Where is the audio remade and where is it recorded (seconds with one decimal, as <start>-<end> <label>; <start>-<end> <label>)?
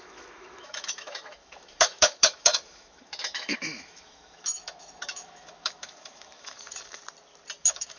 0.0-7.0 remade; 7.0-7.6 recorded; 7.6-8.0 remade